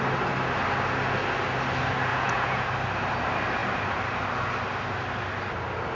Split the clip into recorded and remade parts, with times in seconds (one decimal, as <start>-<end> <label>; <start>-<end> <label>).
0.0-2.1 recorded; 2.1-2.7 remade; 2.7-5.9 recorded